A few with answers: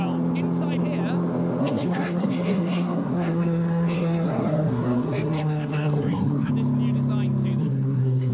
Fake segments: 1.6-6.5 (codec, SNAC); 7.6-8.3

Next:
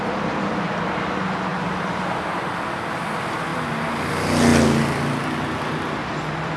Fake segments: 1.5-2.0 (vocoder, BigVGAN v2); 6.0-6.6

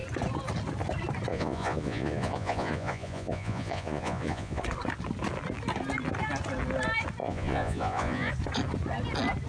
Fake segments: 1.3-4.6 (vocoder, Vocos); 7.2-8.3

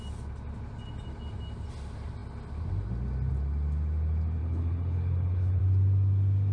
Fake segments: 4.4-5.6 (codec, HILCodec)

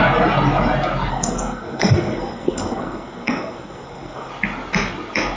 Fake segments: 1.1-4.3 (codec, SNAC)

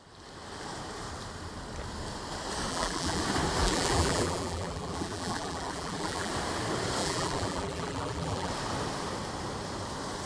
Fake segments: 2.7-3.2 (vocoder, BigVGAN v2); 3.6-6.3; 7.0-8.5